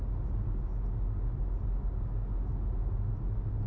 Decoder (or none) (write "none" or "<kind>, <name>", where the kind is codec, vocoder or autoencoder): none